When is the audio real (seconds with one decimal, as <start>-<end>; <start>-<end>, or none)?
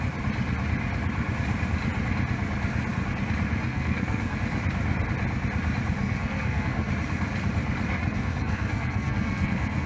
0.0-3.7; 4.4-6.0; 6.9-8.0